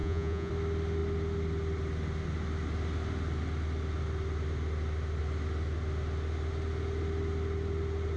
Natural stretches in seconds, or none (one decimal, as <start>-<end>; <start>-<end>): 0.5-8.2